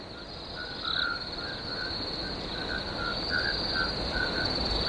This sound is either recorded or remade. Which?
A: recorded